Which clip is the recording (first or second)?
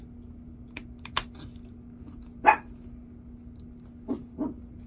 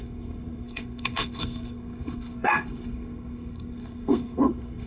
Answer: first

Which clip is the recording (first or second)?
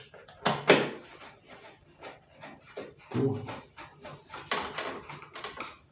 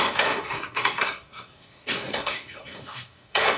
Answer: first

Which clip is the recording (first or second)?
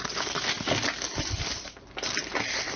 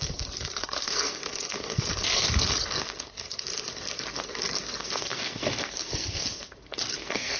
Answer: first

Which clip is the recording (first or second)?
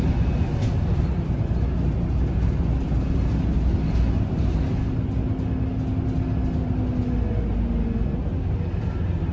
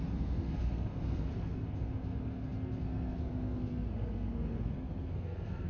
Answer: first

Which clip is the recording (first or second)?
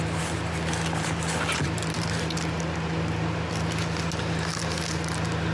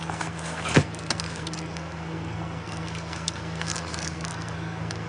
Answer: first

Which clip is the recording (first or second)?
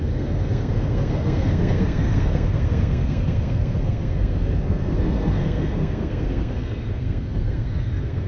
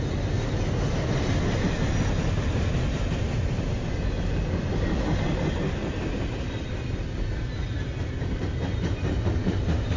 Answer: second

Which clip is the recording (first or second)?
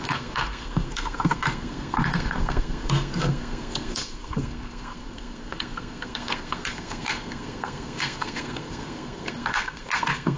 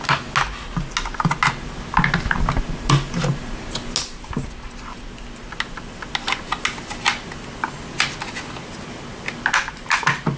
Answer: second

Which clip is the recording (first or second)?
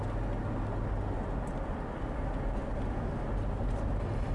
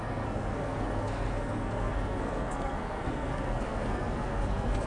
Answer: first